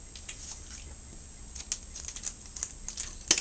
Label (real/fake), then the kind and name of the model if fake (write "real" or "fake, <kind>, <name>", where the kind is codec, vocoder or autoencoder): real